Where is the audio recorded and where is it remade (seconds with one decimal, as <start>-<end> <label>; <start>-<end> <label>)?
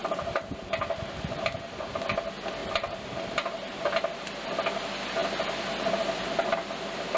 0.0-1.3 remade; 1.3-2.6 recorded; 2.6-3.9 remade; 3.9-7.2 recorded